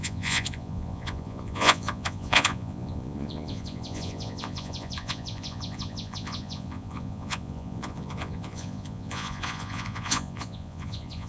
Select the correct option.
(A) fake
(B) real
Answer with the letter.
A